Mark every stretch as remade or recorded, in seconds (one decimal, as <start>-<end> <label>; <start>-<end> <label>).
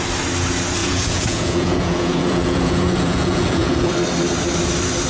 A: 0.0-0.8 recorded; 0.8-3.9 remade; 3.9-5.1 recorded